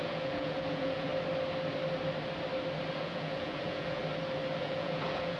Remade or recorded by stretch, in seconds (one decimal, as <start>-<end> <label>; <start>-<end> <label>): 0.0-1.1 remade; 1.1-2.9 recorded; 2.9-4.0 remade; 4.0-4.6 recorded; 4.6-5.4 remade